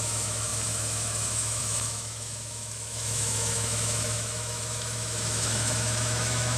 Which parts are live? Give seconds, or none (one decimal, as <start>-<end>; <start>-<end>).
none